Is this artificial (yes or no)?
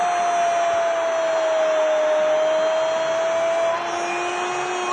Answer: no